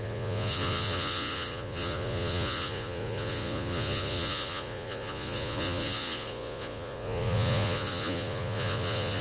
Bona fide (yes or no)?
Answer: no